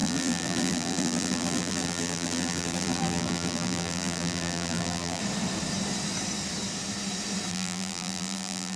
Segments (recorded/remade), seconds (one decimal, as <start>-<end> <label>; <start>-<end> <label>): 0.0-5.2 remade; 5.2-7.5 recorded; 7.5-8.8 remade